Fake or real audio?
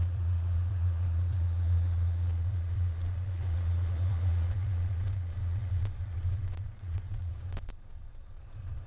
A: fake